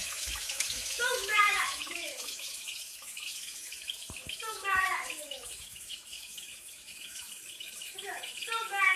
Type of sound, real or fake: fake